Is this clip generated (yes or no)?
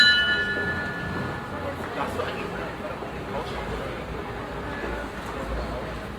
no